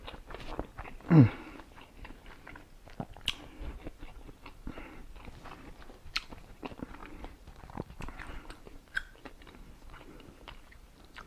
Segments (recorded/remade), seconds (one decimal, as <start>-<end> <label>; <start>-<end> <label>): 0.0-0.5 remade; 0.5-4.3 recorded; 4.3-5.0 remade; 5.0-5.7 recorded; 5.7-11.3 remade